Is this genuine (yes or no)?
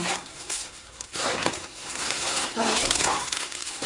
no